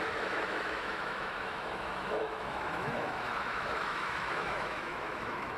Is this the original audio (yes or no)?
no